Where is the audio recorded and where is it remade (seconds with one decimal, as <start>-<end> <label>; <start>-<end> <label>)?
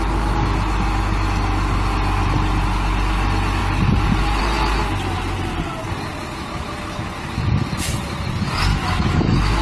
0.0-8.7 recorded; 8.7-9.6 remade